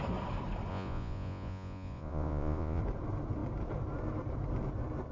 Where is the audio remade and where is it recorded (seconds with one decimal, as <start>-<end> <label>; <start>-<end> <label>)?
0.0-0.7 recorded; 0.7-2.8 remade; 2.8-5.1 recorded